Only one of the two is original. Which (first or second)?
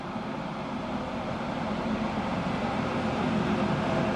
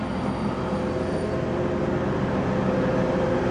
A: second